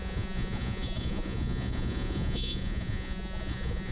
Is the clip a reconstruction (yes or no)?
yes